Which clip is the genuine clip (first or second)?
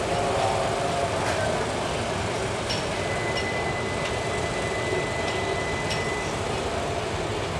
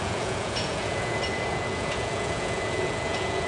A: first